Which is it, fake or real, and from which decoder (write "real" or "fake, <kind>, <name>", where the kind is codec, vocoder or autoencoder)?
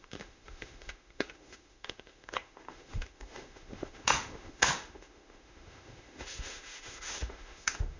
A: fake, autoencoder, DAC-VAE